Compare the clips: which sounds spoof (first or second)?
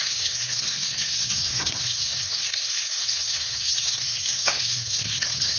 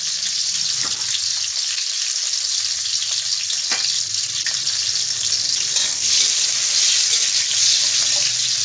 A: first